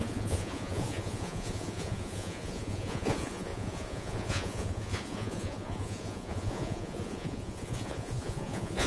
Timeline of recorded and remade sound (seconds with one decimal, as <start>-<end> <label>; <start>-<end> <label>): 0.0-8.9 remade